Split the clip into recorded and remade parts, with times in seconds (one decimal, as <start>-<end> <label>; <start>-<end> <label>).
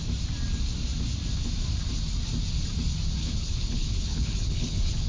0.0-3.2 recorded; 3.2-5.1 remade